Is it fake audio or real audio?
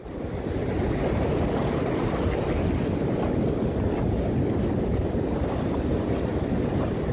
real